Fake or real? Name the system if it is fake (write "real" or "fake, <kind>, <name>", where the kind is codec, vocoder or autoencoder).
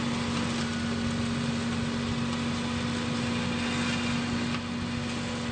real